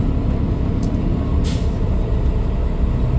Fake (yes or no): no